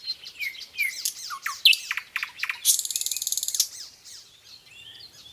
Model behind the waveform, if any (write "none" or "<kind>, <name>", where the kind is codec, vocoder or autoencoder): none